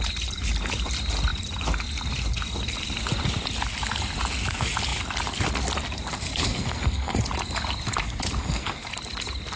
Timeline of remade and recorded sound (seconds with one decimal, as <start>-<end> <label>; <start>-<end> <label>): 0.0-6.5 recorded; 6.5-7.2 remade; 7.2-8.4 recorded; 8.4-8.9 remade; 8.9-9.6 recorded